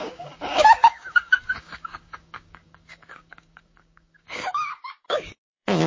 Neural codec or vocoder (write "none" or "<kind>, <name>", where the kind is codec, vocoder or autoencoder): codec, DAC